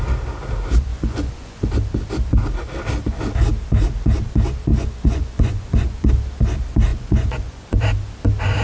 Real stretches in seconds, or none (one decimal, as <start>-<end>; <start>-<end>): 0.0-0.9; 1.7-4.7; 6.1-6.9; 7.8-8.6